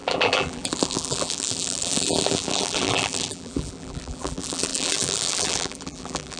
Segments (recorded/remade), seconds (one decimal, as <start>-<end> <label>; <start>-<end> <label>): 0.0-6.4 remade